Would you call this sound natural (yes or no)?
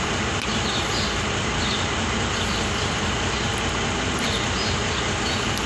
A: no